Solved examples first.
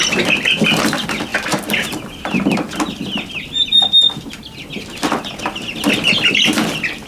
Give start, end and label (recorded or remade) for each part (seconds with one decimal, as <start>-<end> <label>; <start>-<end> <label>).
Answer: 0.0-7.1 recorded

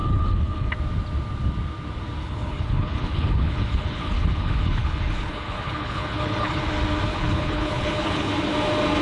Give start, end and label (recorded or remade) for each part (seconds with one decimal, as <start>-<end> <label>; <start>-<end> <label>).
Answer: 0.0-0.7 remade; 0.7-2.2 recorded; 2.2-6.6 remade; 6.6-7.1 recorded; 7.1-8.3 remade; 8.3-9.0 recorded

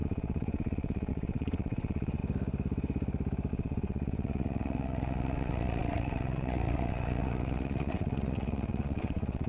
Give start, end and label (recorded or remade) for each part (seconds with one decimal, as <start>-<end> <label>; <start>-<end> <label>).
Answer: 0.0-2.2 remade; 2.2-3.5 recorded; 3.5-9.5 remade